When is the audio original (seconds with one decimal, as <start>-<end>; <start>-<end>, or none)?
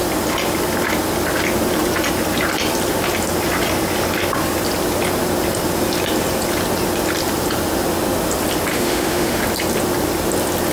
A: 0.0-8.7; 9.4-10.7